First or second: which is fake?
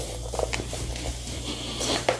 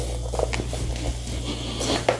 first